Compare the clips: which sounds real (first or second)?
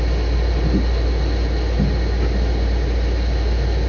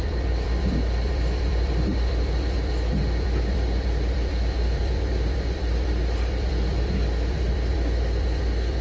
first